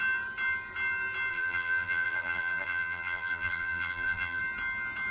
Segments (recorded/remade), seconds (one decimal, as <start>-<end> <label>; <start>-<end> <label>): 0.0-1.3 recorded; 1.3-4.4 remade; 4.4-5.1 recorded